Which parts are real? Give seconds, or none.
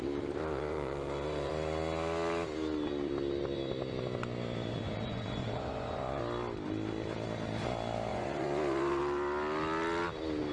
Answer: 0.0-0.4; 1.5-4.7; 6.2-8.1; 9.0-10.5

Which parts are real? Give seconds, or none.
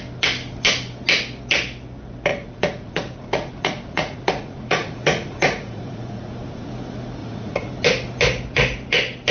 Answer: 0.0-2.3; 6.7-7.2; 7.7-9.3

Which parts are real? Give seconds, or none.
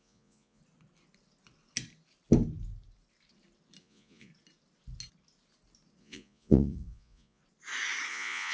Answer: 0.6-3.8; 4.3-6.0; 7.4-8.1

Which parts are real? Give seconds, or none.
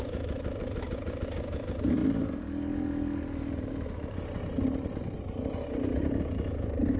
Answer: 0.0-7.0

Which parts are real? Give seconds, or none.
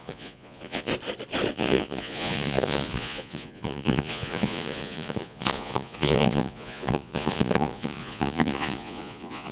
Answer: 0.9-1.5